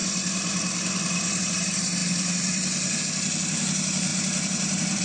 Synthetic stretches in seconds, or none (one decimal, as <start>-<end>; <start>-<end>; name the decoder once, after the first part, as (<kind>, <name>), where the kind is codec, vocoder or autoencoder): 0.0-1.4 (vocoder, BigVGAN v2); 2.0-3.0; 4.1-5.0